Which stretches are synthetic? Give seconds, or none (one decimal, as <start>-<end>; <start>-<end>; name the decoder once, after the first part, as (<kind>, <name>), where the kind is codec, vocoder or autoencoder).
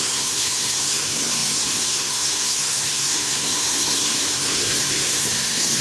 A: 0.0-5.8 (codec, SNAC)